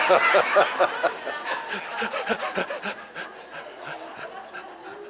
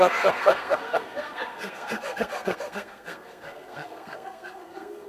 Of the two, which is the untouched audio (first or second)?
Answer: first